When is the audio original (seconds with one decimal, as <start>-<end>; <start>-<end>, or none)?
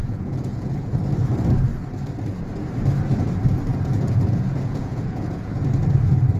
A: 1.0-3.7; 5.6-6.4